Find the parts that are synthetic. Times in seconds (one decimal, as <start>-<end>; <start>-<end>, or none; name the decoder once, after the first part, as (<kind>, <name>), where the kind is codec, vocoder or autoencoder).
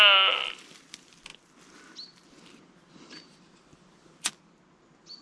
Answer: none